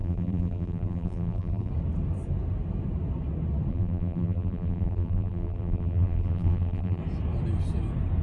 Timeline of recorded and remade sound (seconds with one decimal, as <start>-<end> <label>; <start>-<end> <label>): 0.0-1.7 remade; 1.7-3.7 recorded; 3.7-7.0 remade; 7.0-8.2 recorded